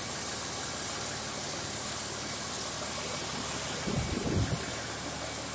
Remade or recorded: recorded